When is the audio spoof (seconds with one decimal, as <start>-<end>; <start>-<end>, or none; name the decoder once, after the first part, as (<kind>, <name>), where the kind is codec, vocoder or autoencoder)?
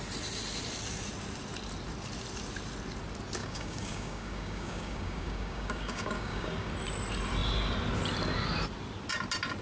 3.4-6.7 (codec, DAC)